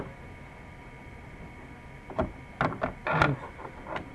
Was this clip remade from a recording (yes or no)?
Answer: no